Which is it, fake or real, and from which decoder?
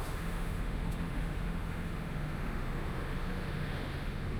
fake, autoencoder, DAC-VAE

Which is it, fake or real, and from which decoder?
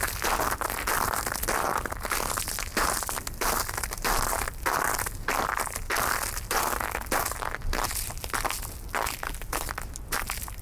real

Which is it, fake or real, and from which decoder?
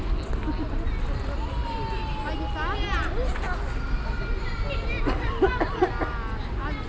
real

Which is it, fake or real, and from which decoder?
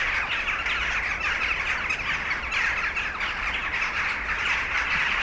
real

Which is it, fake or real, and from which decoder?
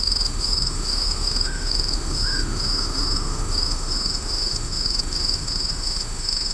fake, autoencoder, DAC-VAE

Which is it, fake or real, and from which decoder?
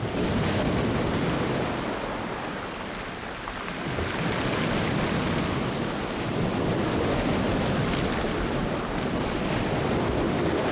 real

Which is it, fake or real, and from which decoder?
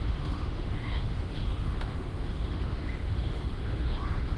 fake, autoencoder, DAC-VAE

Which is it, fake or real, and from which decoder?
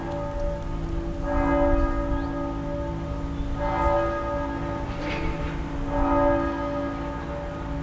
real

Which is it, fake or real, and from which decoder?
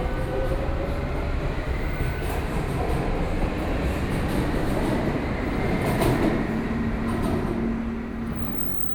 real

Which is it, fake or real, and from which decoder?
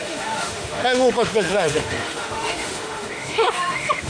fake, autoencoder, DAC-VAE